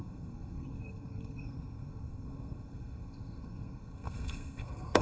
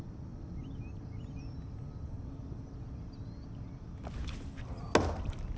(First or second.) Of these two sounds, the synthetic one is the first